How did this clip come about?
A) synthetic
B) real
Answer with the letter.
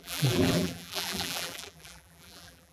A